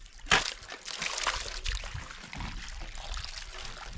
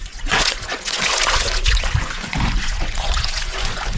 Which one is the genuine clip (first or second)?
first